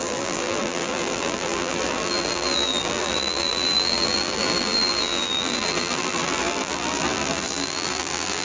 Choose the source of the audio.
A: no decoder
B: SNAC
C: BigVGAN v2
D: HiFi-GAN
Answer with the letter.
C